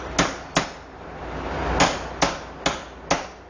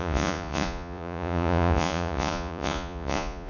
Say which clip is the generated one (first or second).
second